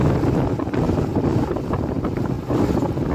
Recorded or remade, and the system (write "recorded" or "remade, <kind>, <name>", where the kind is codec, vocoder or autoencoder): recorded